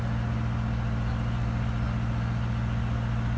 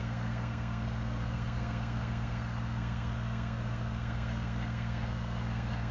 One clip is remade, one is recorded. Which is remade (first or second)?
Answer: second